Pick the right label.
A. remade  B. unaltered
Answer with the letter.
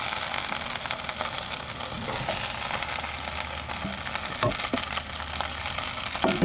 B